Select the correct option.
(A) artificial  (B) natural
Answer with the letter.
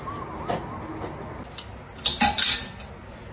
B